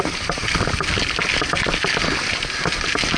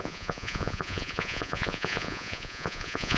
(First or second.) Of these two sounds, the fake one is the second